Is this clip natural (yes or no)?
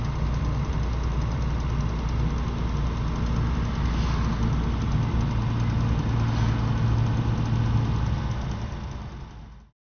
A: yes